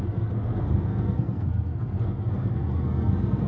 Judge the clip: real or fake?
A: fake